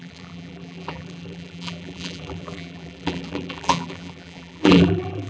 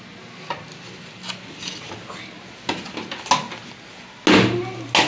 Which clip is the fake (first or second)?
first